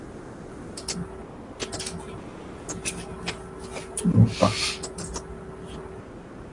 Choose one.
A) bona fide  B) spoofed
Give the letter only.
A